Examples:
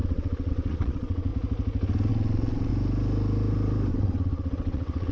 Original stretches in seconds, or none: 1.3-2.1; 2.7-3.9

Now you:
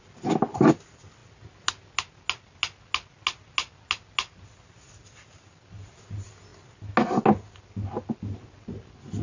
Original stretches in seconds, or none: 0.0-9.2

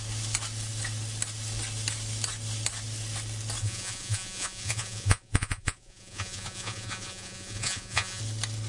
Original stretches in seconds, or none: 0.0-3.6; 8.2-8.7

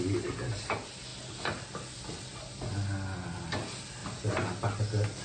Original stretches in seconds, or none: 0.0-5.2

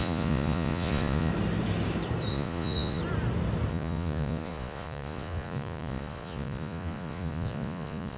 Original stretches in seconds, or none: 1.3-2.3; 3.0-3.7

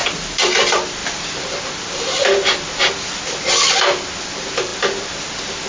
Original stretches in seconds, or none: 0.5-5.7

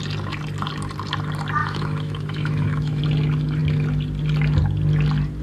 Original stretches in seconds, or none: 0.0-1.6; 3.0-5.4

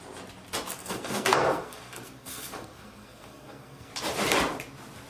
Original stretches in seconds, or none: 0.0-0.8; 3.9-5.1